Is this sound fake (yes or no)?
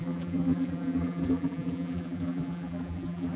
yes